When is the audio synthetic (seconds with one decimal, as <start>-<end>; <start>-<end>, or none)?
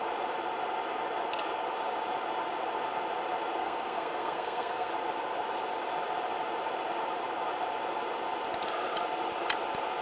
3.6-4.9